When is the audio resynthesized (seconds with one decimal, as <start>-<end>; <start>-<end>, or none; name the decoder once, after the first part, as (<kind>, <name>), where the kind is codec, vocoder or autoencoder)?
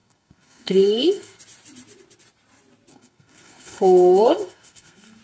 0.0-1.4 (codec, SNAC); 2.9-5.2